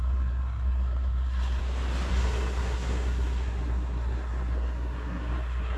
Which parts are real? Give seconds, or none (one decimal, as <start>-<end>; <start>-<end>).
1.6-2.1